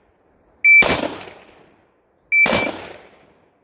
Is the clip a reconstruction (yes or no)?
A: no